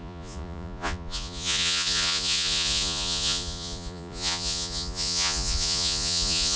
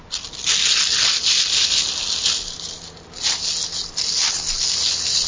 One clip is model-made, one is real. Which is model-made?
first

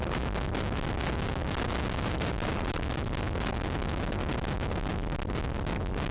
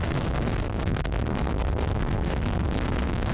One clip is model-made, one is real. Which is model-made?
second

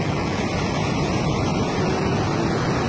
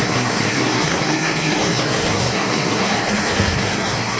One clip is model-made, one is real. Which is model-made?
second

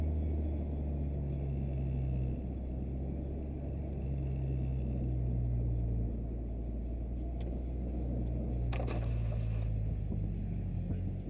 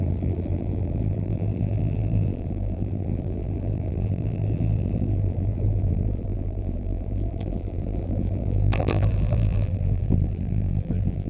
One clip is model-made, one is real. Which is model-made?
second